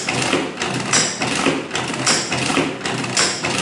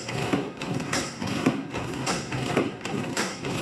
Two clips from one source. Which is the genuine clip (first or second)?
first